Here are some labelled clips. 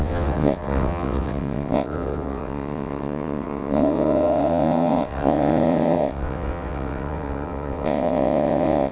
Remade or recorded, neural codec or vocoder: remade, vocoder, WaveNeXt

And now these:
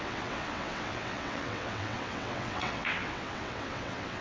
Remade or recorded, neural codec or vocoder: remade, vocoder, WaveNeXt